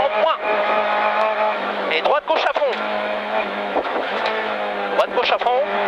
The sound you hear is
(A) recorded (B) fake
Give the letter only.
B